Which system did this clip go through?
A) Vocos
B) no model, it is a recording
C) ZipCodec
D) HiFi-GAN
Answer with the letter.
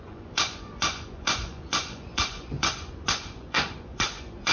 A